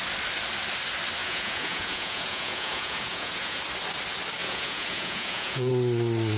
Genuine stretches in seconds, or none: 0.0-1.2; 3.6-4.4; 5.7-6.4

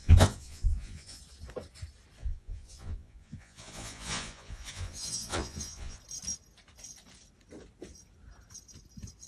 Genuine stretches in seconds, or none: 1.2-2.2; 6.0-9.3

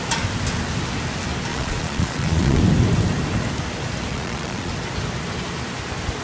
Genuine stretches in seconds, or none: 0.0-1.5; 2.6-4.1; 4.7-6.2

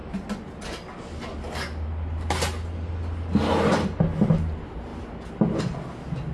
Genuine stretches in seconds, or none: 0.0-6.3

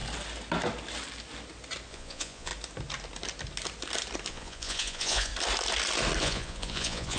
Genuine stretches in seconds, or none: 0.0-1.9; 2.5-4.3; 5.3-6.2

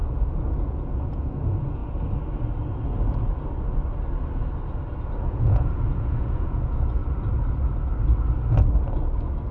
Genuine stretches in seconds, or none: 0.0-0.5; 1.8-5.2; 7.0-9.5

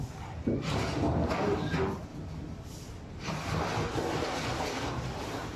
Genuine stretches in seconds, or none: 0.0-5.6

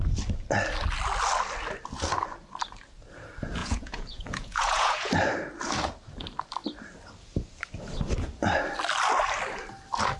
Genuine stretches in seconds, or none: 0.0-3.6; 5.1-10.2